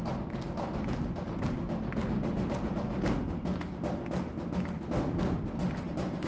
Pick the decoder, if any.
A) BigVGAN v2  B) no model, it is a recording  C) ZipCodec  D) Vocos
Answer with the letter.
B